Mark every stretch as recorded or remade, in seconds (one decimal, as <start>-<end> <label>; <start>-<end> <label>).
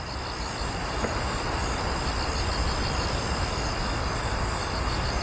0.0-5.2 recorded